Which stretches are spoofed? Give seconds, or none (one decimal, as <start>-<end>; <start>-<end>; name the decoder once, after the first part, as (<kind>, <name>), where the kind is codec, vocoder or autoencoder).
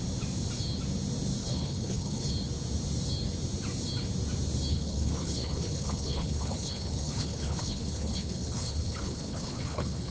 1.4-2.3 (codec, HILCodec); 4.7-10.1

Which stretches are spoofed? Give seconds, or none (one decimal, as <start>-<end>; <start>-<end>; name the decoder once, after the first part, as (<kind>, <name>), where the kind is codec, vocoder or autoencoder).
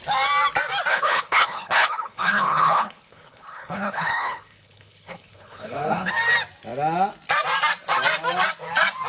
0.9-6.1 (codec, HILCodec)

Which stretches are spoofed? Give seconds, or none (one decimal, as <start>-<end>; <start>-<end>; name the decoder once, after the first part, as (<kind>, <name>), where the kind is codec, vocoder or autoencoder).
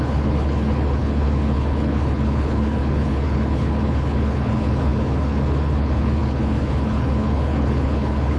0.0-8.4 (codec, HILCodec)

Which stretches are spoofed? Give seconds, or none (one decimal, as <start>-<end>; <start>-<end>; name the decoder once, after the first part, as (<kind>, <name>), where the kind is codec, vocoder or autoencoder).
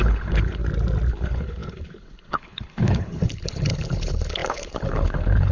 0.0-0.6 (codec, HILCodec); 1.1-5.5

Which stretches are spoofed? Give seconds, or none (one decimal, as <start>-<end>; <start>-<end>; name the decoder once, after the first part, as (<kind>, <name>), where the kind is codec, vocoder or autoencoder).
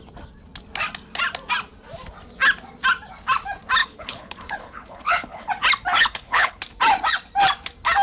3.8-5.5 (codec, HILCodec); 6.0-6.6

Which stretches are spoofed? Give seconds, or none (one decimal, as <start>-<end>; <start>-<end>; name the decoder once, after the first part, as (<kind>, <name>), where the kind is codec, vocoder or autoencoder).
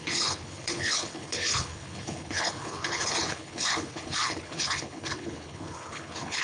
0.0-6.4 (codec, HILCodec)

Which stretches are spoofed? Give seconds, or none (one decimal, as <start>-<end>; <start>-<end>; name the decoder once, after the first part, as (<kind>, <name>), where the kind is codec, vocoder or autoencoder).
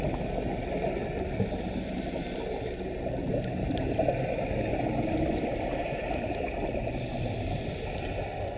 none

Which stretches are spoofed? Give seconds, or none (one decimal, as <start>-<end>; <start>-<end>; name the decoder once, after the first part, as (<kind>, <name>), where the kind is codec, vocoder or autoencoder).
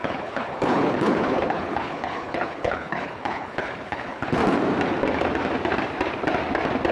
0.0-4.4 (codec, HILCodec)